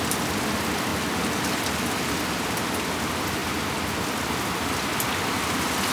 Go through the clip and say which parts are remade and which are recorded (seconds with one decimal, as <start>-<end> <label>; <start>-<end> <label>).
0.0-5.9 recorded

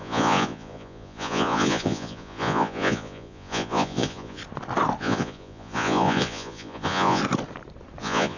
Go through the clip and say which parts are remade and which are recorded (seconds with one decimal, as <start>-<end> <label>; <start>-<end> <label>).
0.0-4.4 remade; 4.4-5.0 recorded; 5.0-7.2 remade; 7.2-8.0 recorded; 8.0-8.4 remade

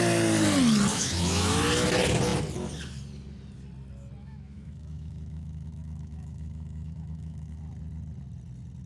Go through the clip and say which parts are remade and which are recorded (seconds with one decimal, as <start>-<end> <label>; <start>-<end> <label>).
0.0-0.9 recorded; 0.9-1.6 remade; 1.6-4.2 recorded; 4.2-7.6 remade; 7.6-8.9 recorded